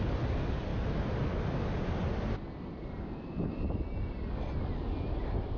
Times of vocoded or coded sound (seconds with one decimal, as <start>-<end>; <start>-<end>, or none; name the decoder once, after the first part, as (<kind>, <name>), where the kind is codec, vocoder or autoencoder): none